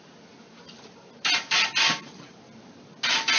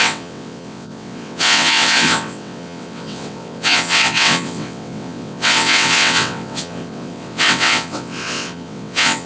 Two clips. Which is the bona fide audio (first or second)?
first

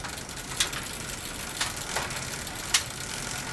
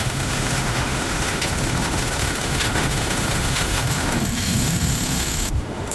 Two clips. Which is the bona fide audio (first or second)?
first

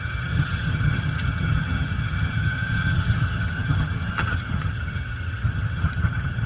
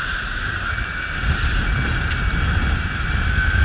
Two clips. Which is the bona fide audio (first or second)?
second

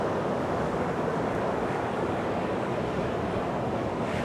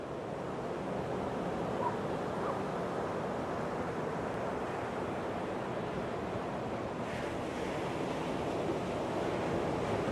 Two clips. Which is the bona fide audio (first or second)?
second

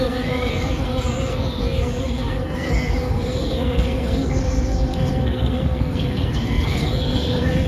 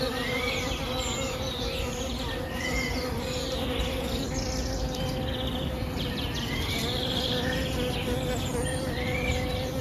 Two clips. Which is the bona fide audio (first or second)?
second